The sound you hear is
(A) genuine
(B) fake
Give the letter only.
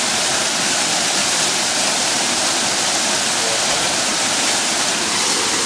A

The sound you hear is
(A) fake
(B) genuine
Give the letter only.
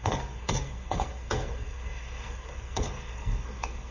A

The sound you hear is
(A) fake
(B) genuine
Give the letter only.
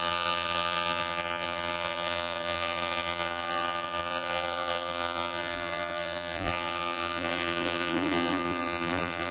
A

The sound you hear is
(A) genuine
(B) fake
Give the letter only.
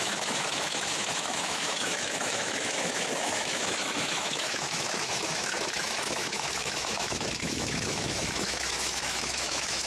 B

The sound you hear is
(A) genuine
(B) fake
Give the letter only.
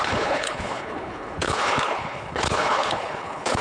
B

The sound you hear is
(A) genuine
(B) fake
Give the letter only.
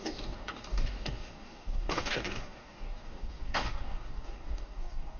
B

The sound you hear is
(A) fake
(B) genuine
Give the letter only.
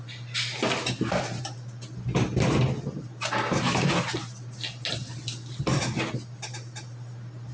B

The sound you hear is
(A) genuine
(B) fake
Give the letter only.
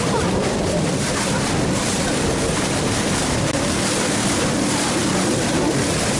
B